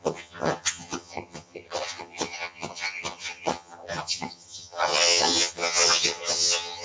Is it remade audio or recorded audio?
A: remade